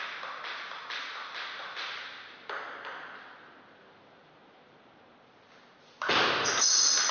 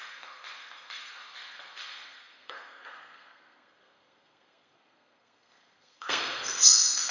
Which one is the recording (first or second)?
first